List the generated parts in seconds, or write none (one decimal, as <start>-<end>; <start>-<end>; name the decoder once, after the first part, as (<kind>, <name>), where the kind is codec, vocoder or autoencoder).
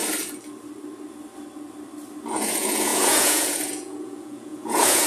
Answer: 2.2-5.1 (vocoder, Vocos)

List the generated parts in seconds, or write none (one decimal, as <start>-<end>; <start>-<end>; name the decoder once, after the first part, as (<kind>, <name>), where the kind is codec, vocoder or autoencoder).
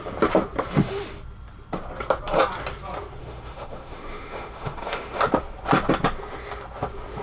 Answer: 3.2-5.2 (autoencoder, DAC-VAE)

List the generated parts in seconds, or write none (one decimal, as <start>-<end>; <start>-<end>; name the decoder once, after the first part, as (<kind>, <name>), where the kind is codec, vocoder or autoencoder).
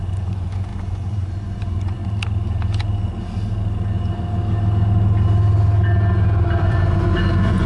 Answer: 0.0-2.0 (vocoder, Vocos); 6.6-7.7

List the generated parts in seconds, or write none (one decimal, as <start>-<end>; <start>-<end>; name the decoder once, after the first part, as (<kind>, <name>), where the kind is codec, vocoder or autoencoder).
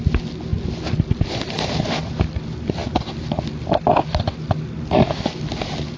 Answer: none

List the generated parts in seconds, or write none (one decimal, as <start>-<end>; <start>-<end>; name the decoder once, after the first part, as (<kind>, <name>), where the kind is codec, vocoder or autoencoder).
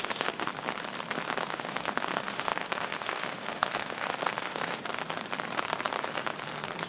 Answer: 0.0-0.5 (autoencoder, DAC-VAE); 1.5-4.8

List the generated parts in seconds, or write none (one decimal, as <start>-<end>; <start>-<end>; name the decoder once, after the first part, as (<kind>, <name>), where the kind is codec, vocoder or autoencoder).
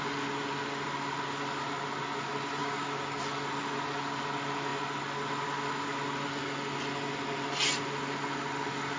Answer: 2.6-3.2 (codec, DAC)